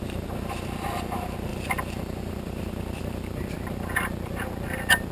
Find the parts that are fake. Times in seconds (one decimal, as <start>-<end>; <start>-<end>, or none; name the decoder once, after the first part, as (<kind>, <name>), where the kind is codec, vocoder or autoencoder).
1.5-3.5 (vocoder, BigVGAN v2)